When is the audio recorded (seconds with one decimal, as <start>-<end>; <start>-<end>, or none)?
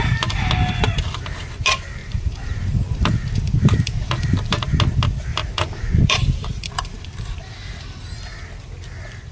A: 0.0-2.0; 4.7-5.3; 7.7-9.3